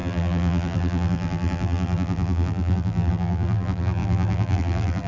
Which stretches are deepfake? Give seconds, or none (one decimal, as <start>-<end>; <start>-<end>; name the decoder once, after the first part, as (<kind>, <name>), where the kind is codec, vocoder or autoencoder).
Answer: 0.0-5.1 (vocoder, BigVGAN v2)